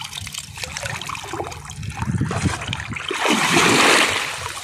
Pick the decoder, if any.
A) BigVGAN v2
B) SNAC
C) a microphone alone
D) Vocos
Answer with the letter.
C